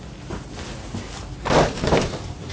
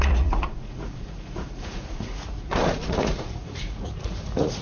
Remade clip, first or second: second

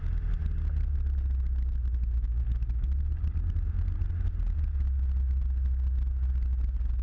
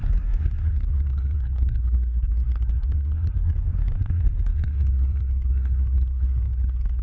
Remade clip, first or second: second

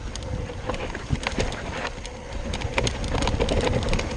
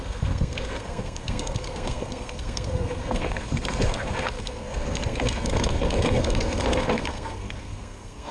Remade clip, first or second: second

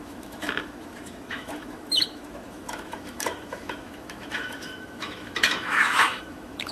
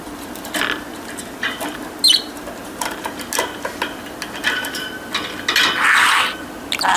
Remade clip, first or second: first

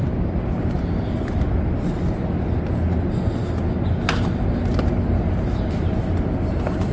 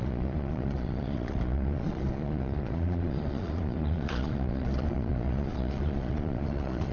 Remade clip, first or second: second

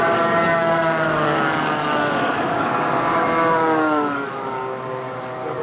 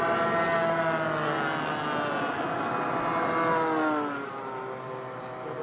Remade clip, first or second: first